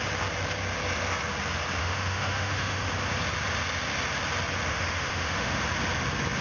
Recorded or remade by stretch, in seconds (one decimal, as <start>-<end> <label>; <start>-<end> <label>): 0.0-1.8 recorded; 1.8-2.9 remade; 2.9-4.7 recorded; 4.7-5.6 remade; 5.6-6.4 recorded